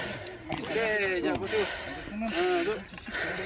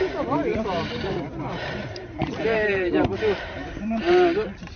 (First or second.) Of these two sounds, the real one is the first